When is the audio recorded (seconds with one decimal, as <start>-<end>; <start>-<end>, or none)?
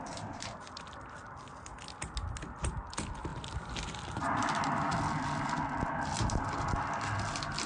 0.0-7.7